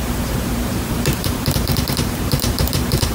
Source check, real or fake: fake